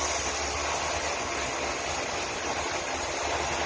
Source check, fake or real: real